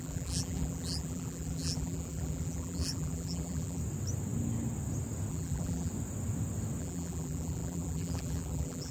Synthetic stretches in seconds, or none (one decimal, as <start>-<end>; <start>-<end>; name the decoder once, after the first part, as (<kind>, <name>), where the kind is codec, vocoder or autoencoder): 0.0-3.8 (vocoder, BigVGAN v2); 5.3-5.9; 6.8-8.9

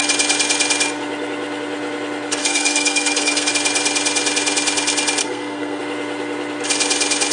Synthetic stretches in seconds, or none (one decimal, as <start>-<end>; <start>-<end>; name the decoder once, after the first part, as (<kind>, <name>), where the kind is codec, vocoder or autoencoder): 2.4-3.5 (codec, SNAC); 5.2-5.8

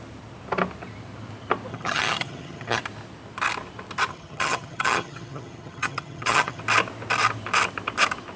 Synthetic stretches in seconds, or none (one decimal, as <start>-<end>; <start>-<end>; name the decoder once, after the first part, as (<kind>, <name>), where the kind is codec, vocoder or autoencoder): 1.7-2.8 (vocoder, HiFi-GAN); 4.1-6.6

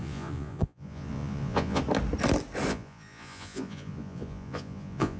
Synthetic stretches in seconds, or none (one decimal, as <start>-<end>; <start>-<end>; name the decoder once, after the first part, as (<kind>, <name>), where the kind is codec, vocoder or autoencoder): 0.0-1.8 (vocoder, Vocos); 2.7-5.2

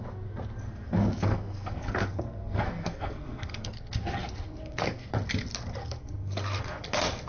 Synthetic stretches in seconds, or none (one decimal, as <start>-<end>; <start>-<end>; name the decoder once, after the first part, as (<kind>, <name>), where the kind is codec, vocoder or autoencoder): 0.7-5.1 (codec, SNAC); 5.8-6.6

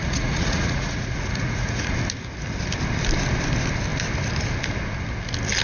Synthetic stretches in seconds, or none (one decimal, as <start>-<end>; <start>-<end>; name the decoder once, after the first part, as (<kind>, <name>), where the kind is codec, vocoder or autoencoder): 0.0-1.9 (vocoder, Vocos)

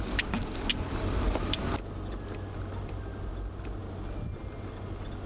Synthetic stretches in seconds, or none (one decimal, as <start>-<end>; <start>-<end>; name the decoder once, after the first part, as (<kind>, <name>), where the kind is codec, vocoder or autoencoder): 0.7-1.6 (vocoder, BigVGAN v2)